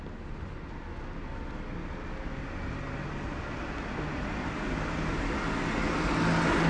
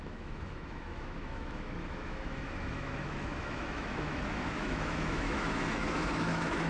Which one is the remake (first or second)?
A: second